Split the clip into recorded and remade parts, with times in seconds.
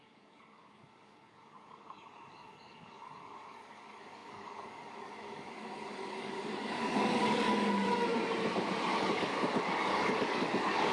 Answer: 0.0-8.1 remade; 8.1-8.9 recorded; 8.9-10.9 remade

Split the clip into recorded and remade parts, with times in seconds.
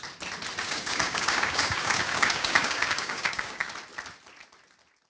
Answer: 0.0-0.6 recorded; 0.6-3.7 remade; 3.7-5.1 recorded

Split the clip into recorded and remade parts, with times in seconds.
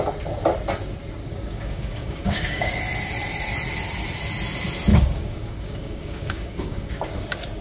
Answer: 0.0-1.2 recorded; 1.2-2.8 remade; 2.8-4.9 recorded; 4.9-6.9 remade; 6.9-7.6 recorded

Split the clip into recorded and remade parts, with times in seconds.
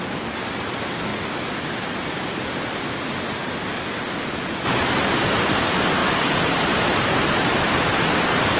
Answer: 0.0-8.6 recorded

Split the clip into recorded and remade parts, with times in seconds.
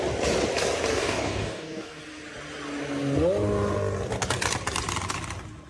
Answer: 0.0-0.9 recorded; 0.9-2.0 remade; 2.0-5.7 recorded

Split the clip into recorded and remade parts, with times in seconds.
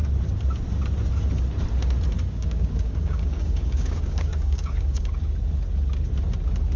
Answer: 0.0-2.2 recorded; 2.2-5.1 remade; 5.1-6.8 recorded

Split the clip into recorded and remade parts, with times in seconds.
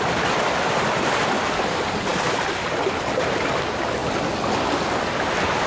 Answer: 0.0-5.7 recorded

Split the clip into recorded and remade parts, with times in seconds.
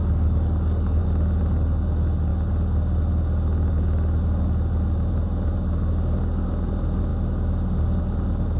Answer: 0.0-1.0 remade; 1.0-8.6 recorded